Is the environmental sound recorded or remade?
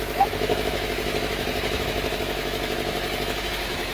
remade